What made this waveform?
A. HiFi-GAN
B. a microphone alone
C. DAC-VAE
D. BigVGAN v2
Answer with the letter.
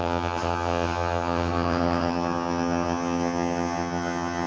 A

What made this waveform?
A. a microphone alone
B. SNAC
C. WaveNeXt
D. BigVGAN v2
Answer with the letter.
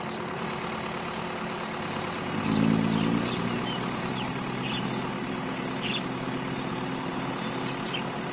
A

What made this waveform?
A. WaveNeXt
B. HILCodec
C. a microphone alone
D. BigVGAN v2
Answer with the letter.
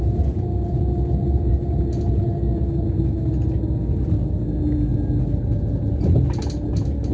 C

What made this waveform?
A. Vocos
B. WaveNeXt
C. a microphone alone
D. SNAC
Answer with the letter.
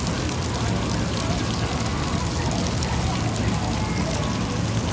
C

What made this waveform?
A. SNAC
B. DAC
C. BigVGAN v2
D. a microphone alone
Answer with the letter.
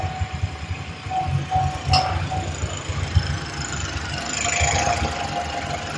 D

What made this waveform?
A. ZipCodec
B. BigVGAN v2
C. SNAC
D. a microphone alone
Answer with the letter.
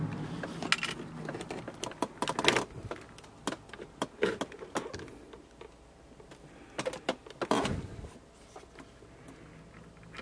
D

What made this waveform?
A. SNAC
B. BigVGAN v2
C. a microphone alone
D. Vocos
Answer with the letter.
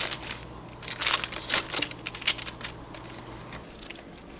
C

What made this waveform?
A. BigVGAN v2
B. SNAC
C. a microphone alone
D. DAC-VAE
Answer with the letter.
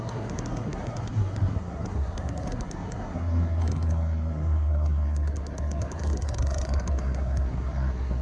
B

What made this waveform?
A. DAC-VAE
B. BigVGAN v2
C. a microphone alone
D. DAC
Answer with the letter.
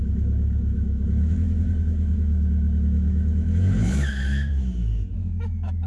A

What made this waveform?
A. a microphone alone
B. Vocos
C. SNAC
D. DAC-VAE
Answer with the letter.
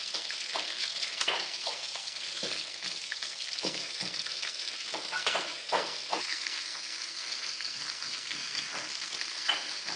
C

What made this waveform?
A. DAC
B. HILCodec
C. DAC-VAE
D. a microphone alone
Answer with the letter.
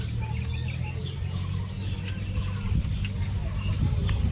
D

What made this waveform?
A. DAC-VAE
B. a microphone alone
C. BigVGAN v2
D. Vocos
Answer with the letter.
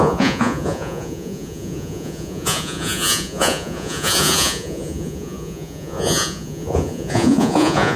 D